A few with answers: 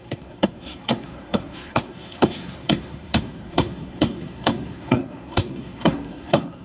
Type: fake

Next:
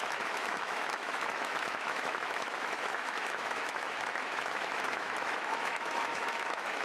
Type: fake